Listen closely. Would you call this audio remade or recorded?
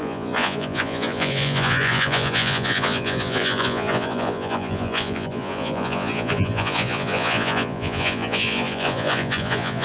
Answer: remade